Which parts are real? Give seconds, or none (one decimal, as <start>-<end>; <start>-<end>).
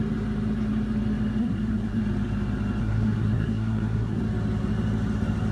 0.0-1.4; 2.0-2.8; 4.2-5.5